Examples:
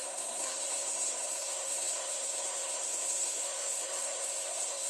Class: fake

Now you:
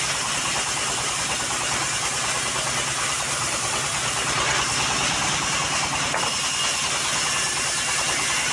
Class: real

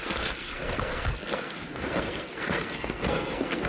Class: fake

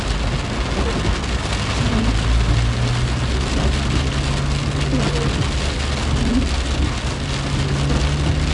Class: real